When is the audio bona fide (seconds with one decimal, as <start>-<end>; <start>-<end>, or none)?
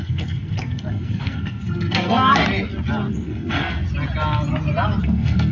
2.4-3.1; 3.8-5.0